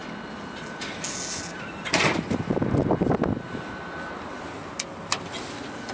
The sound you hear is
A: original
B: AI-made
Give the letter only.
A